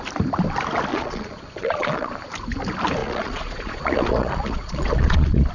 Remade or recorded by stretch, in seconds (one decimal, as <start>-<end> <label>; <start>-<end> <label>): 0.0-0.9 recorded; 0.9-2.1 remade; 2.1-3.0 recorded; 3.0-5.5 remade